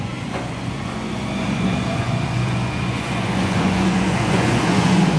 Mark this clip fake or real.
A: fake